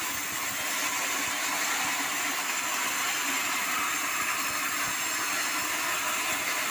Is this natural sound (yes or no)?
yes